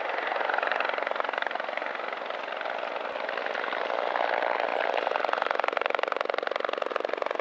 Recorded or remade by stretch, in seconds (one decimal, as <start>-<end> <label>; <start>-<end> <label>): 0.0-7.4 recorded